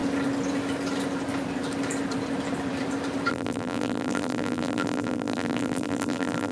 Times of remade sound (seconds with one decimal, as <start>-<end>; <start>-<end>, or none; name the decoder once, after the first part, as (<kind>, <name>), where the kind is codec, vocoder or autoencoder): 3.3-6.5 (vocoder, BigVGAN v2)